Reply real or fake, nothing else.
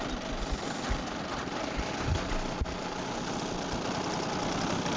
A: real